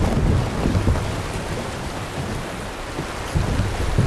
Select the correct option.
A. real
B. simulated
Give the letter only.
A